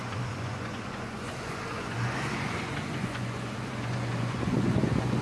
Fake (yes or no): yes